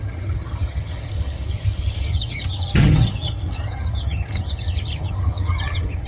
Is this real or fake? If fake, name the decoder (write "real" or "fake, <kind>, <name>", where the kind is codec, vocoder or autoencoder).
fake, vocoder, HiFi-GAN